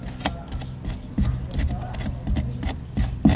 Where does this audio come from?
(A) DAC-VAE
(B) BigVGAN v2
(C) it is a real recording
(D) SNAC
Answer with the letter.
C